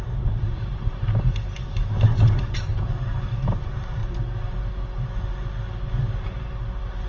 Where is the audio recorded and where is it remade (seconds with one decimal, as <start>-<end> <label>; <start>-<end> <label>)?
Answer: 0.0-2.7 remade; 2.7-3.4 recorded; 3.4-4.0 remade; 4.0-6.1 recorded; 6.1-7.1 remade

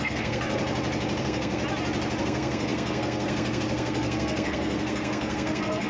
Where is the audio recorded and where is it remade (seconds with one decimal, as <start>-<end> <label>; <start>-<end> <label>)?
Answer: 0.0-0.6 remade; 0.6-1.2 recorded; 1.2-1.6 remade; 1.6-2.2 recorded; 2.2-5.9 remade